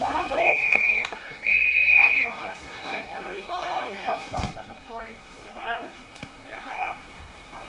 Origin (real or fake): fake